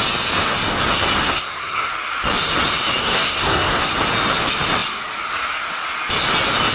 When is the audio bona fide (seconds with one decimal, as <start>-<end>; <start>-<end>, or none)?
0.0-1.2; 1.9-3.0; 3.9-6.7